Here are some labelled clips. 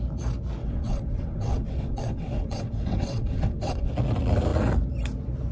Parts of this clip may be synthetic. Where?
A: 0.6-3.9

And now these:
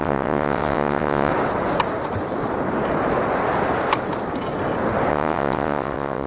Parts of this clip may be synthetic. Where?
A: 0.0-1.3; 5.1-6.3

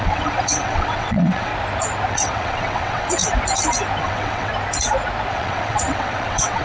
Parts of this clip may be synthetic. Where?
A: 0.0-1.5; 2.1-3.2; 4.0-4.5; 5.3-6.6

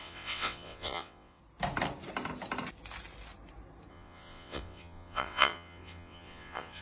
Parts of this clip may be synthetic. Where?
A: 0.0-1.4; 3.9-6.8

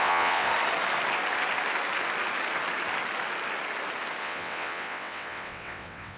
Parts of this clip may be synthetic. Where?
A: 0.0-0.5; 4.2-6.2

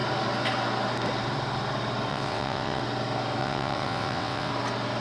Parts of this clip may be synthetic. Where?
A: 2.1-2.8; 3.4-4.5

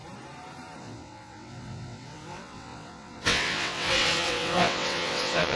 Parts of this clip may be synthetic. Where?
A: 0.8-5.6